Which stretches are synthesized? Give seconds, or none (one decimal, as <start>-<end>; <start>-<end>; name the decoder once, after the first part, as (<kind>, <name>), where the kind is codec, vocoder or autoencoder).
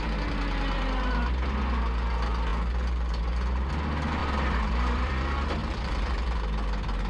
4.2-5.1 (vocoder, BigVGAN v2); 5.6-6.4